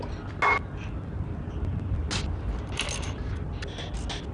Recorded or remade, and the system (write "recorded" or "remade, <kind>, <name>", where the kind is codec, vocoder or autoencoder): recorded